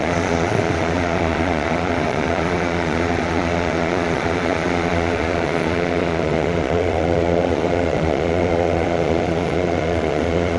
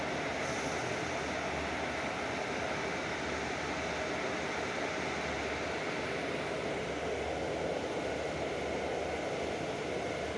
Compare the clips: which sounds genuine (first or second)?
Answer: second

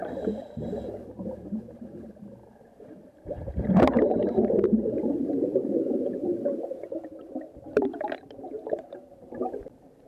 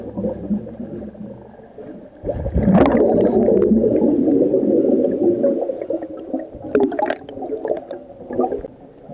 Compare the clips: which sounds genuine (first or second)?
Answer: second